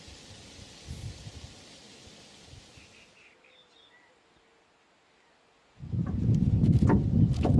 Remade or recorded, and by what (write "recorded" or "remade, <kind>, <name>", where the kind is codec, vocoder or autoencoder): recorded